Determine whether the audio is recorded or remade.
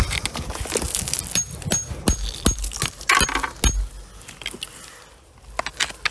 recorded